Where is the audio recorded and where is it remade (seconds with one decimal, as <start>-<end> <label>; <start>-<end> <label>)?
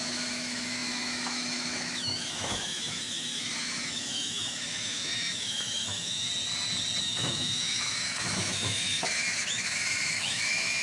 0.0-6.3 remade; 6.3-7.0 recorded; 7.0-10.8 remade